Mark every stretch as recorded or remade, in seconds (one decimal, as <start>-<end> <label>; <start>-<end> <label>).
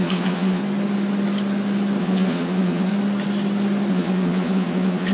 0.0-0.6 remade; 0.6-2.0 recorded; 2.0-2.9 remade; 2.9-3.9 recorded; 3.9-5.1 remade